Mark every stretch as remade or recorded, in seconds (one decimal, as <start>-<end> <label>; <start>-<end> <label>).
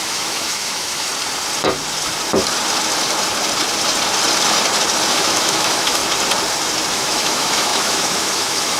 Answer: 0.0-1.1 remade; 1.1-5.1 recorded; 5.1-6.0 remade; 6.0-6.9 recorded; 6.9-8.8 remade